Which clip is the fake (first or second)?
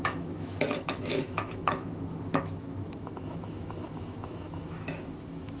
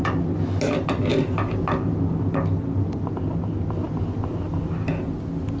first